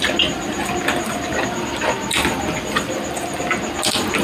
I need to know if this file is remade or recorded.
recorded